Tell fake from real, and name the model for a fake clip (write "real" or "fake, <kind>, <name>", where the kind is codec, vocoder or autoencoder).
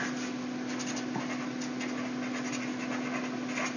real